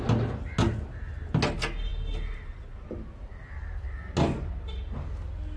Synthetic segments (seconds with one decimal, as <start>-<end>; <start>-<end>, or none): none